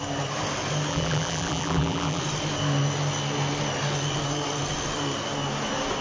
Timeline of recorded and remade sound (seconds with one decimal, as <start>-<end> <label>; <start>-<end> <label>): 0.0-0.9 recorded; 0.9-2.2 remade; 2.2-6.0 recorded

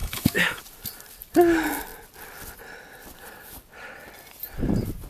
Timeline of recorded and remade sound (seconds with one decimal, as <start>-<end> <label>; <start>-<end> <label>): 0.0-0.6 remade; 0.6-5.1 recorded

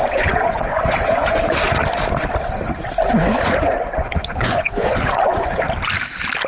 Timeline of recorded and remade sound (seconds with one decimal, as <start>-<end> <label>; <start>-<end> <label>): 0.0-1.4 remade; 1.4-3.1 recorded; 3.1-5.6 remade; 5.6-6.5 recorded